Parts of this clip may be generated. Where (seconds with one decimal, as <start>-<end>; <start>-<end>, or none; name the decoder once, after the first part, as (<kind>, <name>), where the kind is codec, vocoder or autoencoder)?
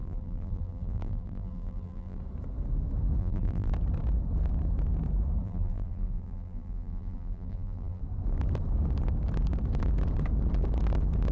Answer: 0.0-2.2 (vocoder, BigVGAN v2); 3.2-3.7; 5.4-8.0